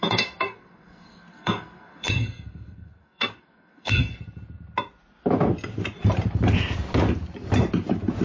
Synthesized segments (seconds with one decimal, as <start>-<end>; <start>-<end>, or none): 0.0-4.2